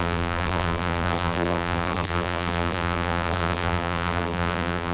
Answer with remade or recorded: remade